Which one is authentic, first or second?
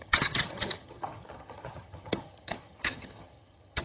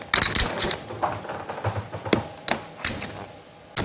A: second